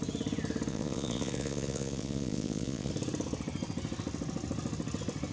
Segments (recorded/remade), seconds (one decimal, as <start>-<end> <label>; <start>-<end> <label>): 0.0-0.7 recorded; 0.7-2.9 remade; 2.9-5.3 recorded